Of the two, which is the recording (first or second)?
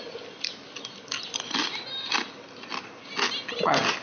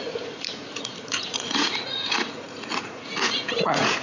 first